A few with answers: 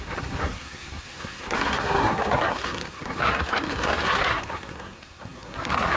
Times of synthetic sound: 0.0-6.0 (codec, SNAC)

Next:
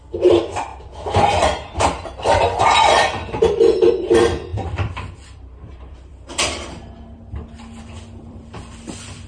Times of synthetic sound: 0.0-9.3 (vocoder, BigVGAN v2)

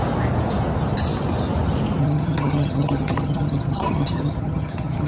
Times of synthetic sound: 2.0-5.1 (vocoder, HiFi-GAN)

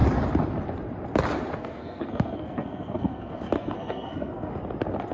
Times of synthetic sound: 1.6-4.5 (codec, SNAC)

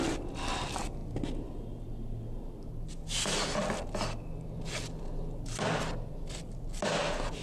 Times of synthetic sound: none